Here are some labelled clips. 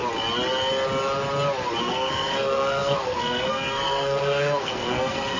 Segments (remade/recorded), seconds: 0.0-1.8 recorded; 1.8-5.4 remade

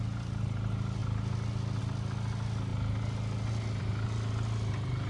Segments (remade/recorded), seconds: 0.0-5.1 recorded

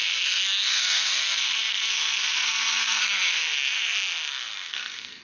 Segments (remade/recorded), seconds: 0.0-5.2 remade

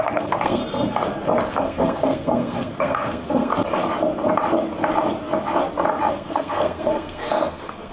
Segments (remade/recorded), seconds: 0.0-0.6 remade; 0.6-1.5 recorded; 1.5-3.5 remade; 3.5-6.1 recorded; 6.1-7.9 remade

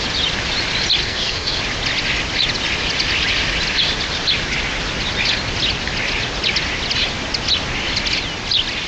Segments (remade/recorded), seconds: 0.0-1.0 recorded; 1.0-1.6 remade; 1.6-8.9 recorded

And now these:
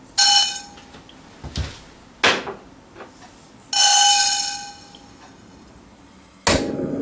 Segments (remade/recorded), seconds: 0.0-7.0 recorded